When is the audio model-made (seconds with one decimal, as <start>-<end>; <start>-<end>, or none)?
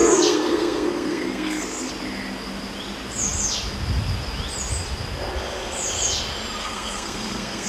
0.0-1.9; 6.6-7.7